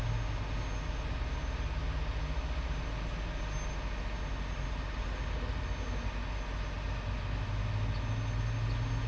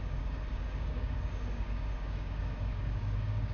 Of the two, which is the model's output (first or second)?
second